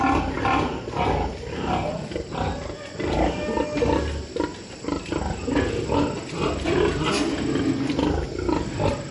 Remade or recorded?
recorded